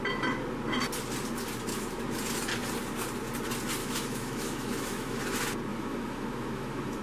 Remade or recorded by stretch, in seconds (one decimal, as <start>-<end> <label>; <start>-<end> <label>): 0.0-1.7 recorded; 1.7-2.2 remade; 2.2-3.8 recorded; 3.8-5.2 remade; 5.2-5.7 recorded; 5.7-7.0 remade